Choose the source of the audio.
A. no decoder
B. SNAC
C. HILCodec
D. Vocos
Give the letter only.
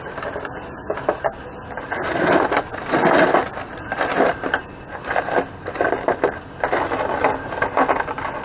A